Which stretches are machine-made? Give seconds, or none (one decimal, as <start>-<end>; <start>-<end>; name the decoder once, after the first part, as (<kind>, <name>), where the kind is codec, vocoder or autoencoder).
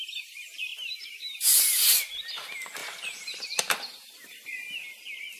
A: 2.8-5.0 (vocoder, BigVGAN v2)